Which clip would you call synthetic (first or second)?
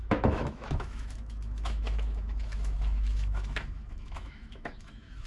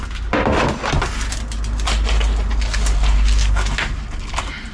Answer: first